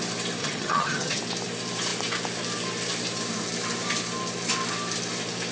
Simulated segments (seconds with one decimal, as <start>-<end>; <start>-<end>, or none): 0.4-1.2